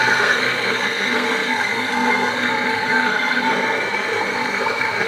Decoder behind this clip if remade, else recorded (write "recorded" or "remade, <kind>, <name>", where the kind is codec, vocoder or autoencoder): remade, codec, SNAC